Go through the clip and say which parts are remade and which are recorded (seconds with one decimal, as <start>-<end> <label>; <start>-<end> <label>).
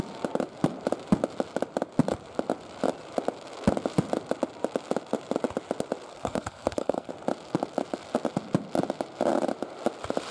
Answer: 0.0-6.1 recorded; 6.1-7.1 remade; 7.1-10.3 recorded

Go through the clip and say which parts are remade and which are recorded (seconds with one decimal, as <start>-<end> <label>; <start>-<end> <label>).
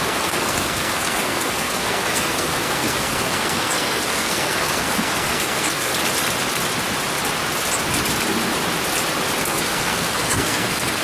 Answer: 0.0-5.9 remade; 5.9-9.4 recorded; 9.4-11.0 remade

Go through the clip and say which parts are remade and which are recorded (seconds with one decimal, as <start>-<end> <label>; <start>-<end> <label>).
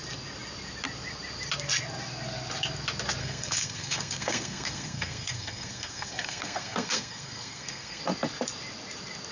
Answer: 0.0-3.2 recorded; 3.2-8.0 remade; 8.0-9.3 recorded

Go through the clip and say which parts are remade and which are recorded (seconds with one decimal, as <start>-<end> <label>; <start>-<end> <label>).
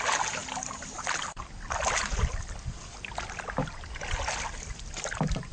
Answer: 0.0-5.5 recorded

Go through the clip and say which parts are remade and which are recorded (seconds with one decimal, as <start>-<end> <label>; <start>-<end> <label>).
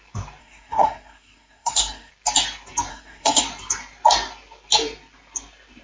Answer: 0.0-0.4 recorded; 0.4-2.1 remade; 2.1-2.9 recorded; 2.9-3.4 remade; 3.4-5.8 recorded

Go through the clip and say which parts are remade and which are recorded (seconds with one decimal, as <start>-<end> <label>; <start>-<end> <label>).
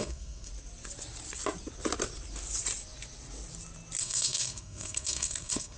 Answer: 0.0-0.5 remade; 0.5-4.0 recorded; 4.0-5.8 remade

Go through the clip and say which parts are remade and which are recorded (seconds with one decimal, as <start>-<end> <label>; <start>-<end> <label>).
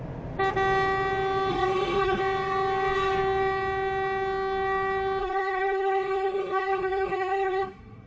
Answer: 0.0-1.5 recorded; 1.5-2.2 remade; 2.2-5.2 recorded; 5.2-8.1 remade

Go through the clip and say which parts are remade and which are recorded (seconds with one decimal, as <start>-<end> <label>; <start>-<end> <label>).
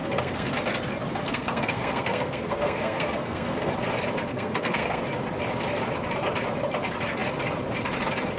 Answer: 0.0-0.5 remade; 0.5-1.2 recorded; 1.2-3.7 remade; 3.7-4.3 recorded; 4.3-5.0 remade; 5.0-8.4 recorded